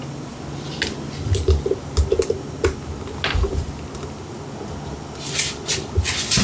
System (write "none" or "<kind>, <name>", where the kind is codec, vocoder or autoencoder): none